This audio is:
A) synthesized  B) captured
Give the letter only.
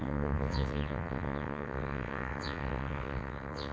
A